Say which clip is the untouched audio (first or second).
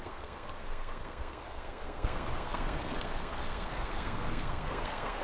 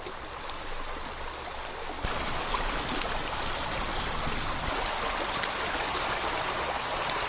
second